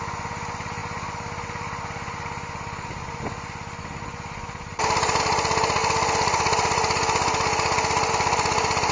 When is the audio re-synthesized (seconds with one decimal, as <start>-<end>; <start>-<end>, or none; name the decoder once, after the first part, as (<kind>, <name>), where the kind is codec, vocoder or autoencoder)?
none